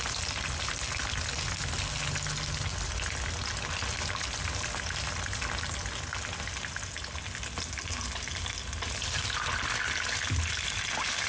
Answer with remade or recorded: recorded